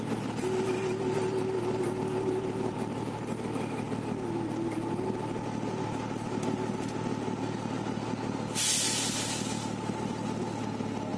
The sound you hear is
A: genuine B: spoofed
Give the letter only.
A